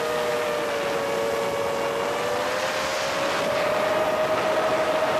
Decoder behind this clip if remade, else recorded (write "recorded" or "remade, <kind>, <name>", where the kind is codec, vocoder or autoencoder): recorded